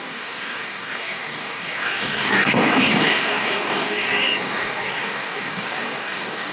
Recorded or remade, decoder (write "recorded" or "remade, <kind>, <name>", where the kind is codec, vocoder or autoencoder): remade, codec, DAC